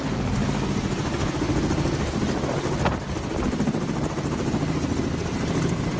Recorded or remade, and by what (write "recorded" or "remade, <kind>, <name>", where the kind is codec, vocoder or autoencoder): recorded